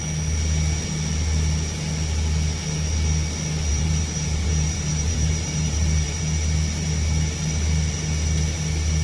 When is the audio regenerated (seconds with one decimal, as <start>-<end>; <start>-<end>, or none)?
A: 3.7-6.2